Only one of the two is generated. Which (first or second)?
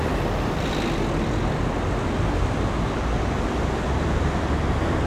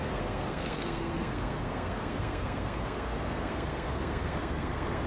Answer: second